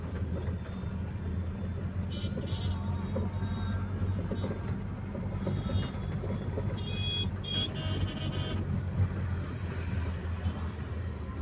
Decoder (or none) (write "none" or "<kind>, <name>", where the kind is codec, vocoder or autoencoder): none